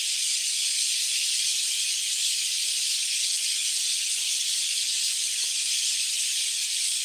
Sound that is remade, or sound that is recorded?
remade